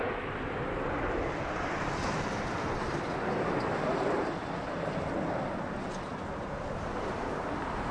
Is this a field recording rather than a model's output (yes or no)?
yes